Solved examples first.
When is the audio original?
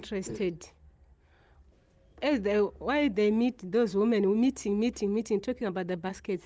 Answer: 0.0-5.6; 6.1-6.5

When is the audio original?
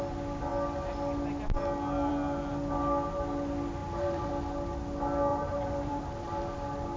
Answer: 0.0-3.8; 4.3-5.3; 6.4-7.0